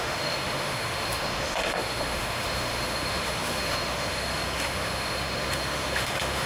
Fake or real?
fake